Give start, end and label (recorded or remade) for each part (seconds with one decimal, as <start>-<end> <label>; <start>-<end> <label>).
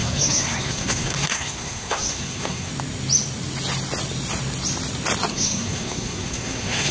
0.0-2.7 remade; 2.7-5.3 recorded; 5.3-6.9 remade